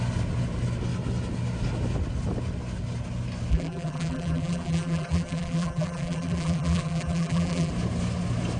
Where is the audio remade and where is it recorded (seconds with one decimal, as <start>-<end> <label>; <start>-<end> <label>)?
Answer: 0.0-3.5 recorded; 3.5-7.7 remade; 7.7-8.6 recorded